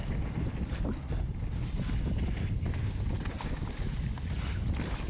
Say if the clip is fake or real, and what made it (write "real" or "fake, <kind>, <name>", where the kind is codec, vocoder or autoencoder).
real